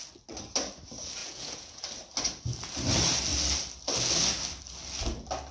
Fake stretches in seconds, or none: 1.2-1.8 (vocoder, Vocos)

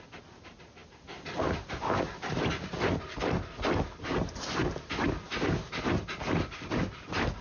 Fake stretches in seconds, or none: none